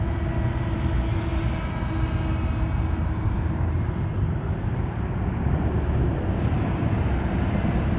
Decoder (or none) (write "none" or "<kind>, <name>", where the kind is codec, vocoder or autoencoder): none